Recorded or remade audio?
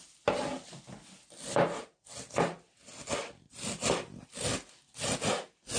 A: recorded